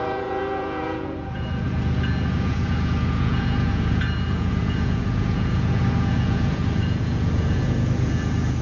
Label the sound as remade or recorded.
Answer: remade